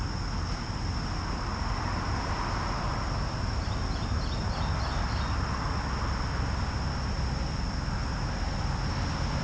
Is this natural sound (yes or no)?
yes